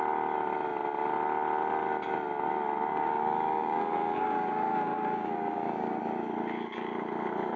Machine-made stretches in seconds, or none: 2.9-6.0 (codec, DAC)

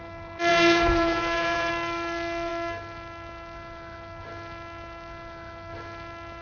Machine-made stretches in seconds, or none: 0.5-1.7 (vocoder, Vocos)

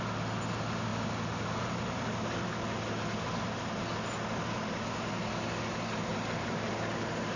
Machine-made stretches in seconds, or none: 6.1-6.7 (vocoder, BigVGAN v2)

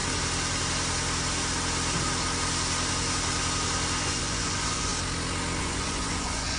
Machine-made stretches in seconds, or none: 4.0-4.9 (vocoder, Vocos); 5.6-6.6